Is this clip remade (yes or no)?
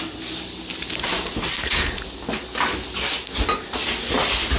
no